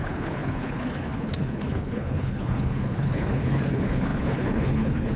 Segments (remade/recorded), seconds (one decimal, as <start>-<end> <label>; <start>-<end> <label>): 0.0-5.2 remade